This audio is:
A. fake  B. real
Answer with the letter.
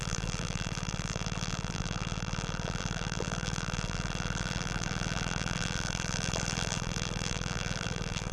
A